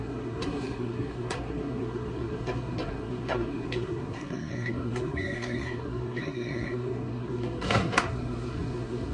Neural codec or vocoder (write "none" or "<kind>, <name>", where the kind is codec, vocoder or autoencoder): codec, SNAC